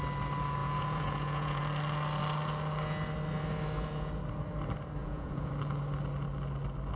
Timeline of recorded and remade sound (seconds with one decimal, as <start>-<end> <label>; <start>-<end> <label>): 0.0-0.6 recorded; 0.6-1.6 remade; 1.6-5.0 recorded; 5.0-5.5 remade; 5.5-7.0 recorded